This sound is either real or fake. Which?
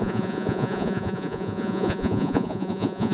fake